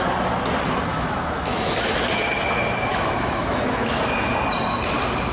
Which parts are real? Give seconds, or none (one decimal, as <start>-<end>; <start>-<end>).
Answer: 0.0-0.9; 1.7-2.9; 4.0-5.3

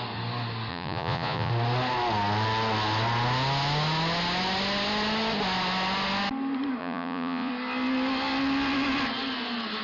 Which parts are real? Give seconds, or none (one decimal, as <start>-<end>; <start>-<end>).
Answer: 0.0-0.7; 1.5-6.8; 7.5-9.8

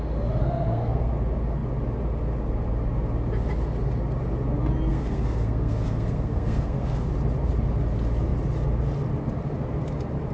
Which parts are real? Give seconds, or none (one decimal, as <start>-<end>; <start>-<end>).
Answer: 0.0-0.4; 1.1-4.9; 7.1-10.3